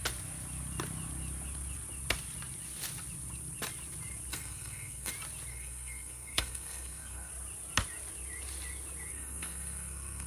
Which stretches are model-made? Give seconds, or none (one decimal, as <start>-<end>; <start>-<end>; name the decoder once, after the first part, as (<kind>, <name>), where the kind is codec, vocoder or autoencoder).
4.3-5.1 (codec, SNAC); 5.5-7.3; 9.1-10.3